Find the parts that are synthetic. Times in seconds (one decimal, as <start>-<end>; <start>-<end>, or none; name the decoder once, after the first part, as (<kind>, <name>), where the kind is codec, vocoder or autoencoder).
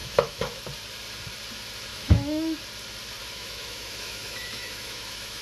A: 0.0-0.6 (autoencoder, DAC-VAE); 1.9-2.6; 3.2-5.4